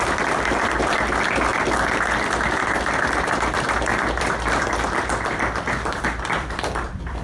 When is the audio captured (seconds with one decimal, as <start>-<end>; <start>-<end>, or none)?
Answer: 1.5-3.1